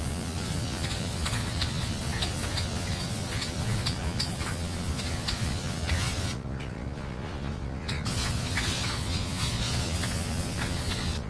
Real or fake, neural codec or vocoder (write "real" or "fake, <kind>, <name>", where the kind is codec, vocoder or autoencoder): fake, vocoder, Vocos